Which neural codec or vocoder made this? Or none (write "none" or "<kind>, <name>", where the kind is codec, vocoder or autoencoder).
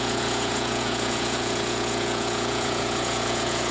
vocoder, Vocos